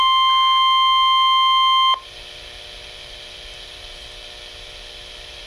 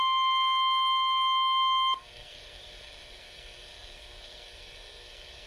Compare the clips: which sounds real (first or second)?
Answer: first